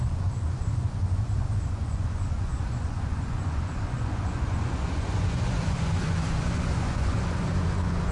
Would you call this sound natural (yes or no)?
no